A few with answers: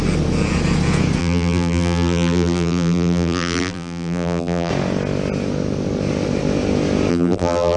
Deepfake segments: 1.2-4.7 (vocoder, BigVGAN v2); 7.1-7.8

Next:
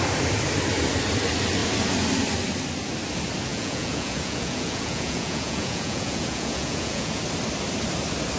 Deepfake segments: 3.5-7.2 (vocoder, Vocos)

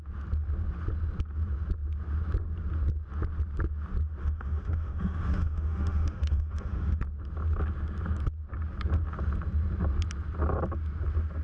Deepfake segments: 4.2-7.0 (autoencoder, DAC-VAE)

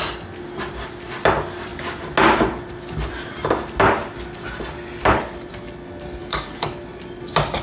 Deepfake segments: 6.2-6.7 (codec, DAC)

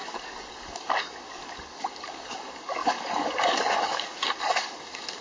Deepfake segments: 0.0-5.2 (codec, DAC)

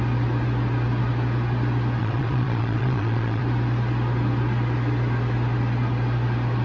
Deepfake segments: 2.0-3.4 (vocoder, Vocos)

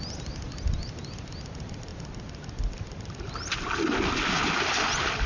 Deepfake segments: none